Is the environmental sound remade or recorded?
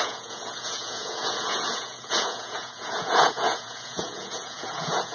remade